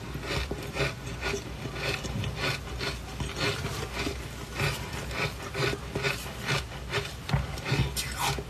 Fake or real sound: real